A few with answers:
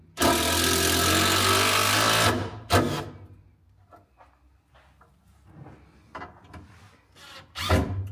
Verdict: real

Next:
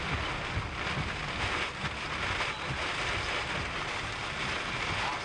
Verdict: real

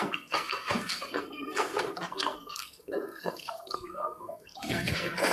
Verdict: fake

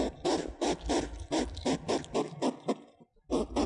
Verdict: real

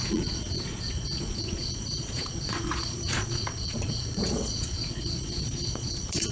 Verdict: fake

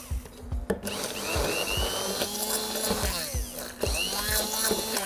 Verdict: real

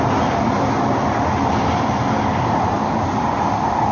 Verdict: real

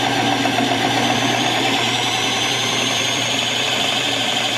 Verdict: fake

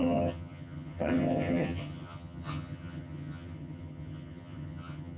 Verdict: fake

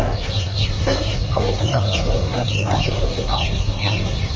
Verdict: fake